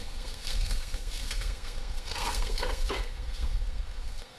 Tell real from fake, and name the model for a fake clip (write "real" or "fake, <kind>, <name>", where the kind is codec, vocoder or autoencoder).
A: fake, codec, SNAC